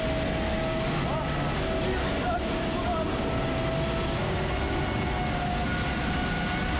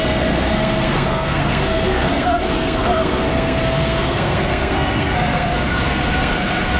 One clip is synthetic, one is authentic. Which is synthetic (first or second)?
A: second